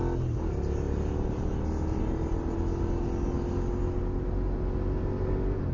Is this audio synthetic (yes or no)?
no